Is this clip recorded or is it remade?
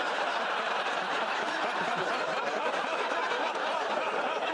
remade